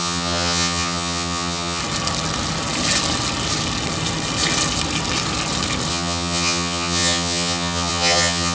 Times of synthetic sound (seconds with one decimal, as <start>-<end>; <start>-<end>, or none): 0.0-1.8; 5.9-8.5